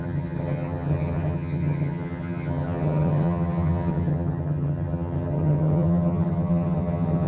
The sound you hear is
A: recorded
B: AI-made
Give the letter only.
B